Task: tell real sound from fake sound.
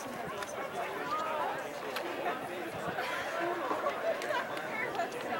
real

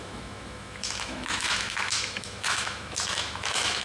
fake